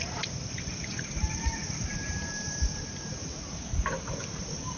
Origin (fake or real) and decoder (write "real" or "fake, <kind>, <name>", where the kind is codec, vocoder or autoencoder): fake, vocoder, BigVGAN v2